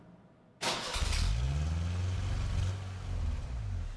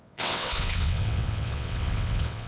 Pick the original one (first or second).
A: first